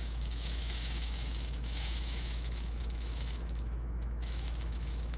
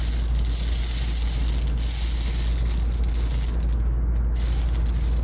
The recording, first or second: second